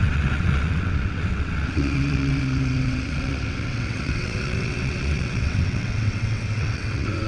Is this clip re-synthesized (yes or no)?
yes